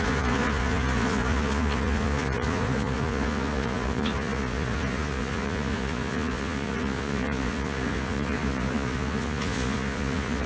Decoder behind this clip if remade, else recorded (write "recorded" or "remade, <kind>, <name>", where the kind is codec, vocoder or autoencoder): remade, vocoder, Vocos